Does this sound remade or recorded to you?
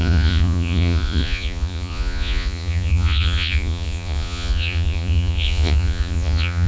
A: remade